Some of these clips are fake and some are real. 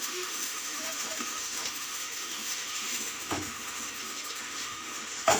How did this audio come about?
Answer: fake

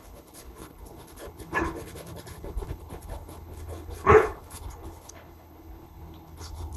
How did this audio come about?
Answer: fake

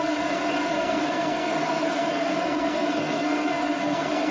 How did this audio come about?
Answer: fake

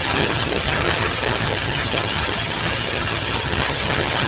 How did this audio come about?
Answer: fake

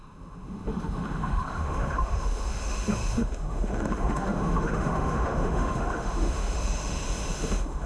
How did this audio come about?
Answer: fake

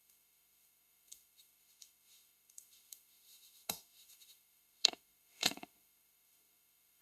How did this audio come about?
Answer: fake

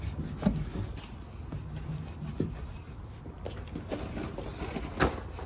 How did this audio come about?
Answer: real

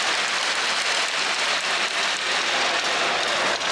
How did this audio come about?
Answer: real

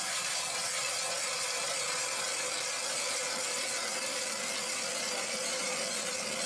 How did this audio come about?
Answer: real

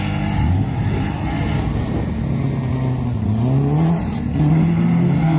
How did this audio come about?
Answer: real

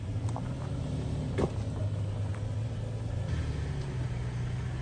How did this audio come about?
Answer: real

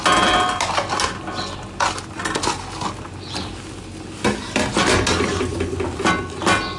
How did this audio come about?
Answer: real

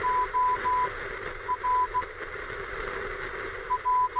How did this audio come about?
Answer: real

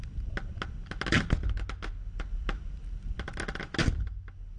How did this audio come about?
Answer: real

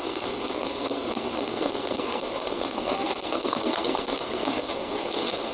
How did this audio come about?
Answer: fake